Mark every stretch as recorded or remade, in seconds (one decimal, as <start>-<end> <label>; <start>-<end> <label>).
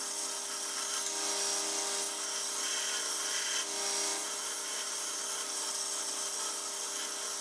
0.0-4.1 recorded; 4.1-5.2 remade; 5.2-7.4 recorded